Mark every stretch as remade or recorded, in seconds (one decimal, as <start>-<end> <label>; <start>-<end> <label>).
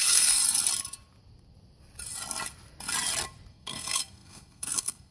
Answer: 0.0-0.4 remade; 0.4-3.5 recorded; 3.5-5.1 remade